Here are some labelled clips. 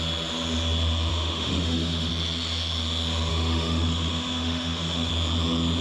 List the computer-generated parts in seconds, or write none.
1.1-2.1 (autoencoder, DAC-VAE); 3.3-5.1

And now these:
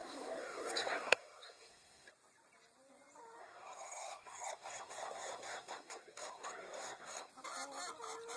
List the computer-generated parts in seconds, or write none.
0.0-2.1 (codec, SNAC); 3.4-7.3